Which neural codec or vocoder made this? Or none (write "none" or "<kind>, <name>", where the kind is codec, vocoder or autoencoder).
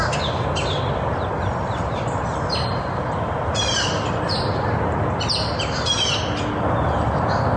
none